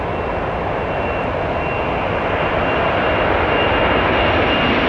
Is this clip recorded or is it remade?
recorded